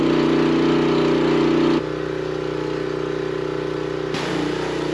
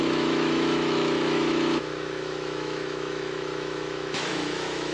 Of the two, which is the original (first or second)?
first